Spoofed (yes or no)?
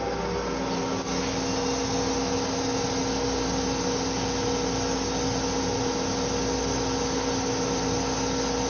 no